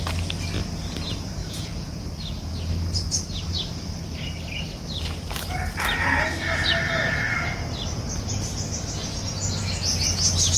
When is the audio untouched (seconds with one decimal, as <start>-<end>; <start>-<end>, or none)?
0.0-1.4; 2.0-10.6